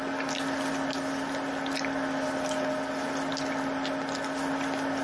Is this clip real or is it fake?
real